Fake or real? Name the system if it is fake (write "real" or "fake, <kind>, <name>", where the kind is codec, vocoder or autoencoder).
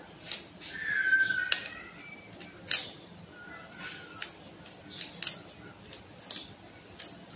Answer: real